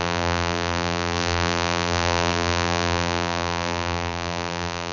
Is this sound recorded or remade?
remade